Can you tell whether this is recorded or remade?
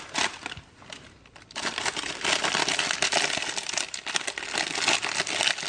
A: recorded